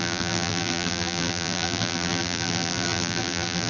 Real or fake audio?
fake